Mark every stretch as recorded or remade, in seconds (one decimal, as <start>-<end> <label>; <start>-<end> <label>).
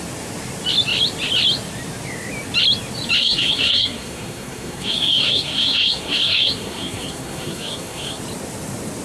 0.0-3.2 recorded; 3.2-8.2 remade; 8.2-9.0 recorded